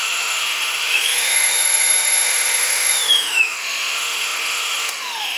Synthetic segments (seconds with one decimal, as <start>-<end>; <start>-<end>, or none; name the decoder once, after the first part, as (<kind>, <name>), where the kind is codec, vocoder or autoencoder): 0.0-5.4 (autoencoder, DAC-VAE)